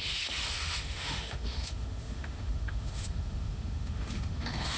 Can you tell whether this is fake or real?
fake